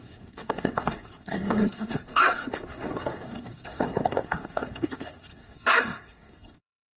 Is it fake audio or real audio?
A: fake